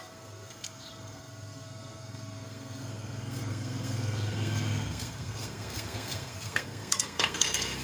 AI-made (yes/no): yes